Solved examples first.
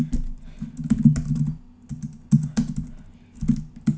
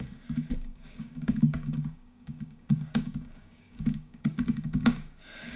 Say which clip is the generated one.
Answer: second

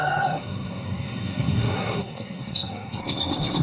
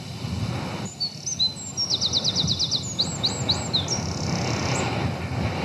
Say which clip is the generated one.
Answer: first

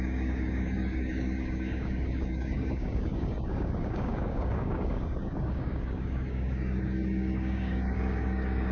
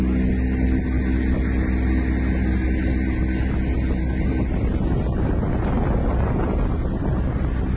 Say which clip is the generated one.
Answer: first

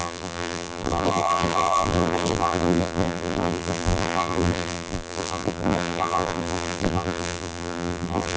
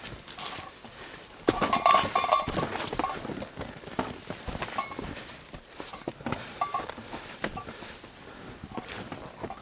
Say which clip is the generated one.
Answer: first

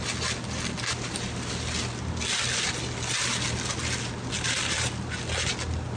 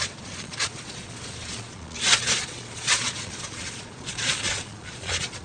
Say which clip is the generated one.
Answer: second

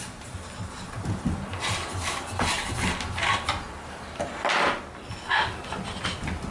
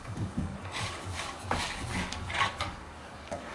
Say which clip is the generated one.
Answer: second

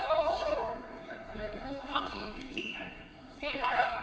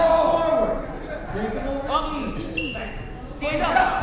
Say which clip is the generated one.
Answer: first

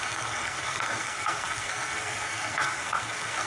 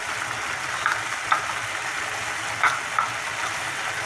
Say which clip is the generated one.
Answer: first